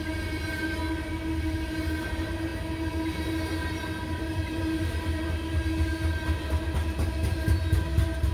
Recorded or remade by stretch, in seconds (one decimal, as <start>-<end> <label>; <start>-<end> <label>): 0.0-8.3 recorded